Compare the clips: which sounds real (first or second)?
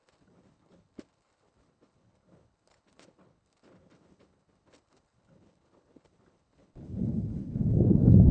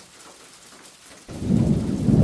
second